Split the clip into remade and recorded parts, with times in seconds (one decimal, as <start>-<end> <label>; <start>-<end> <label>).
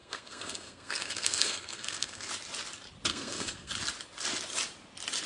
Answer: 0.0-2.3 remade; 2.3-3.1 recorded; 3.1-3.7 remade; 3.7-5.3 recorded